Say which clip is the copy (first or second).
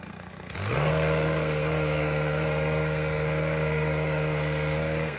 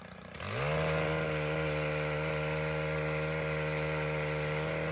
first